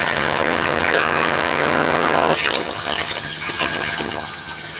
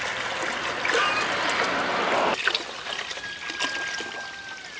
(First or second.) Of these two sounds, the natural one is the second